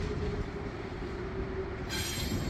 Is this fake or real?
fake